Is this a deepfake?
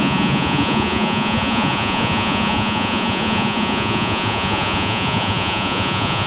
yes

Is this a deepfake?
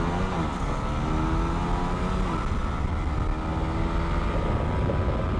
no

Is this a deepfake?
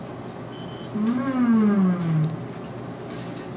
no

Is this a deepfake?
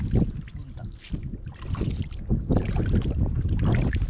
no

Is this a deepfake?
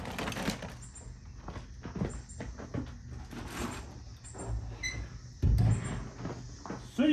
no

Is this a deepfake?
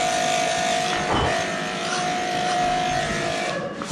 yes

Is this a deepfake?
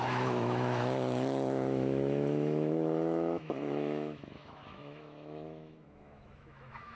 yes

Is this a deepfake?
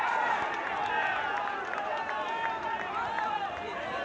no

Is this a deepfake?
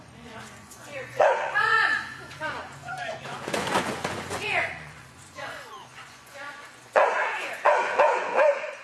yes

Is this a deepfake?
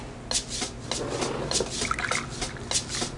no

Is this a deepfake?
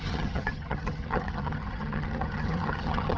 yes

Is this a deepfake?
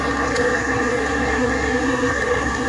yes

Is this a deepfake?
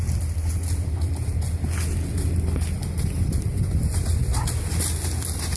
no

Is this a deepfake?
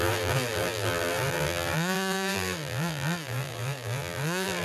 yes